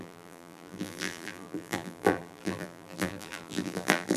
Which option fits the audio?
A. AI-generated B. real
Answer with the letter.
A